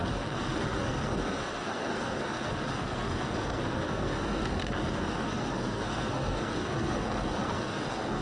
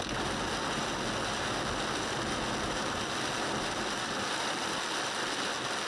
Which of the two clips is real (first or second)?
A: second